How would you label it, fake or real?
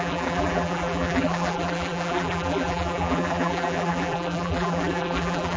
fake